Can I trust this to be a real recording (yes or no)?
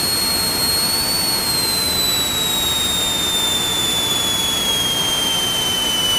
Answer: yes